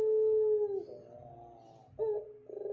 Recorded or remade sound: recorded